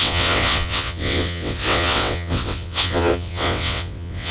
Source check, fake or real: fake